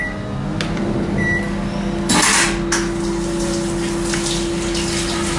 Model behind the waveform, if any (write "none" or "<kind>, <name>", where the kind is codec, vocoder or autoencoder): none